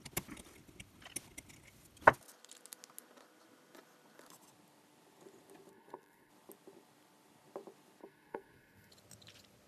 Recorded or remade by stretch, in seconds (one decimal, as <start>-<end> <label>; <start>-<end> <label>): 0.0-5.7 recorded; 5.7-6.3 remade; 6.3-8.0 recorded; 8.0-8.9 remade; 8.9-9.7 recorded

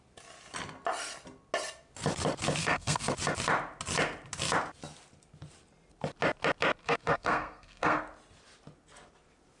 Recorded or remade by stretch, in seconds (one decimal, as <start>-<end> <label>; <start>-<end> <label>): 0.0-2.6 recorded; 2.6-3.1 remade; 3.1-6.8 recorded; 6.8-8.0 remade; 8.0-9.6 recorded

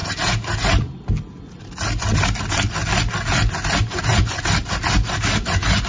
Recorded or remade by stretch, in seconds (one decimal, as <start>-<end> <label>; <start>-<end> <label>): 0.0-5.9 recorded

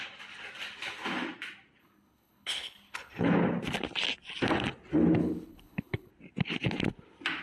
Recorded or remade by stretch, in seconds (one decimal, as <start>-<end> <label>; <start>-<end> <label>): 0.0-1.8 recorded; 1.8-3.3 remade; 3.3-5.2 recorded; 5.2-6.1 remade; 6.1-7.4 recorded

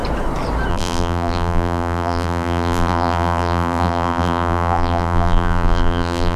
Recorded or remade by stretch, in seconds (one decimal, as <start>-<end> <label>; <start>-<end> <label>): 0.0-0.7 recorded; 0.7-6.4 remade

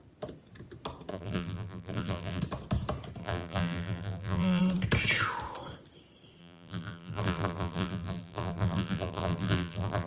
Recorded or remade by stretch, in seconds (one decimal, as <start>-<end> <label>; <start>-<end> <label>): 0.0-1.1 recorded; 1.1-2.4 remade; 2.4-3.2 recorded; 3.2-4.6 remade; 4.6-6.4 recorded; 6.4-10.1 remade